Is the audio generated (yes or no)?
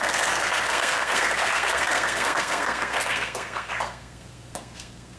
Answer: yes